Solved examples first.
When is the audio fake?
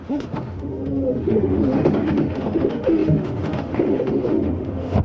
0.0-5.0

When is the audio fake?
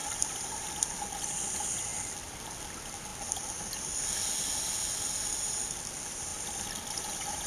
none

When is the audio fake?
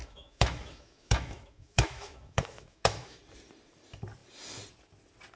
0.0-3.2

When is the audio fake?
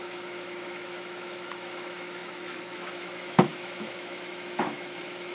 0.0-5.3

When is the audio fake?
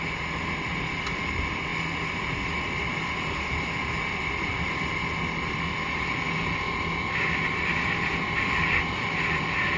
none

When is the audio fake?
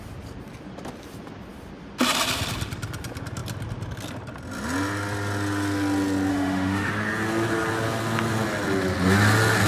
6.3-6.9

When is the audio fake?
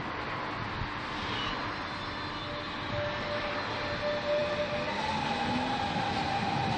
none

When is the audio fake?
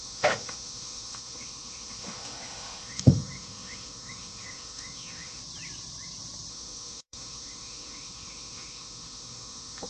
0.0-5.4; 6.5-9.9